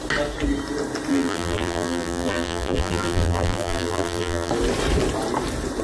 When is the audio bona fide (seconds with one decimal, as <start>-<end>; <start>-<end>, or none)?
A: 0.0-1.1; 4.5-5.8